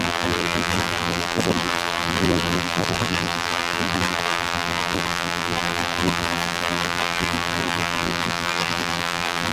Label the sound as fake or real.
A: fake